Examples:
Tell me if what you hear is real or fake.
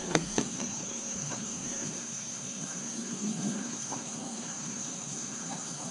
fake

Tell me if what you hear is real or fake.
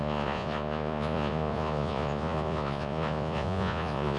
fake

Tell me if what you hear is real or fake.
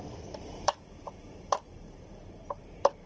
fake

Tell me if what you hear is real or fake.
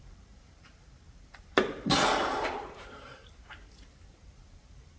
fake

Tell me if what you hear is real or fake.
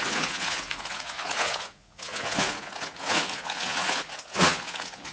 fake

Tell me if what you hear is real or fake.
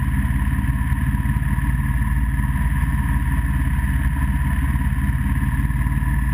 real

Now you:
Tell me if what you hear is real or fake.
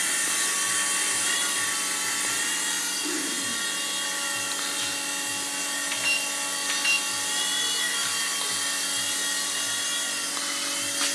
real